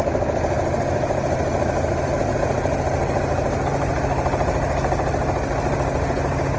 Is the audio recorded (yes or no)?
yes